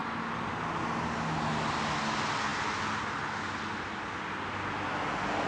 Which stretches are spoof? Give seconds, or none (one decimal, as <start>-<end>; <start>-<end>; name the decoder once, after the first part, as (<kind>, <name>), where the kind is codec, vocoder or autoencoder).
none